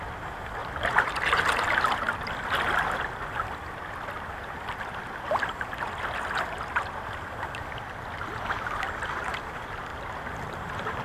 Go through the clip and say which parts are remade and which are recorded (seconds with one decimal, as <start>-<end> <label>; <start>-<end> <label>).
0.0-0.6 recorded; 0.6-1.4 remade; 1.4-11.0 recorded